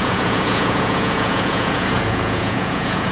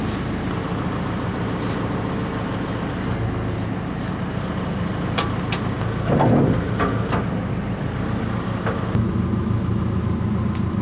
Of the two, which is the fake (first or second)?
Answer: first